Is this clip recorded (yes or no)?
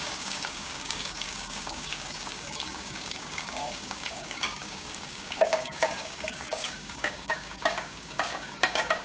no